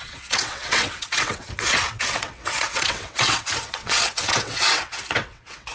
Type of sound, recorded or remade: remade